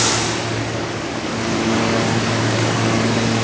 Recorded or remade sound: remade